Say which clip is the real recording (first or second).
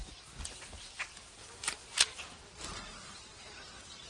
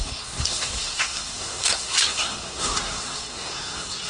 first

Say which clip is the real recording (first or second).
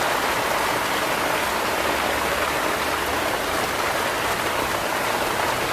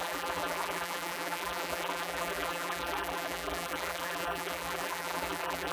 first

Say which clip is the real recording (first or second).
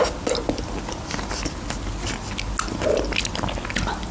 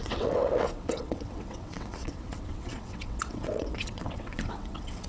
first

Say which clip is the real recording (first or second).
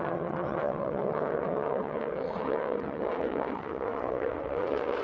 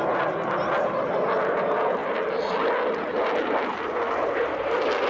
second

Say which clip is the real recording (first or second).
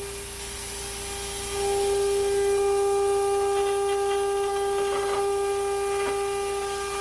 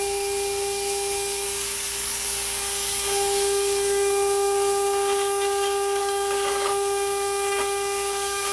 first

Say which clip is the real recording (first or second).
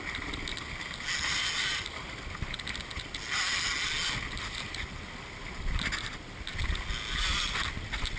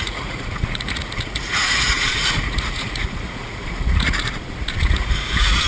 first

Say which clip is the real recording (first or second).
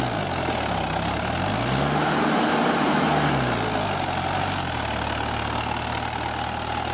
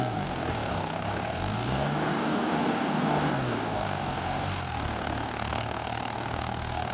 first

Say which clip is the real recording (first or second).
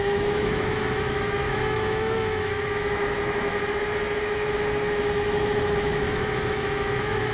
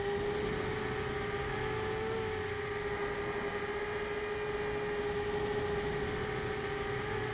second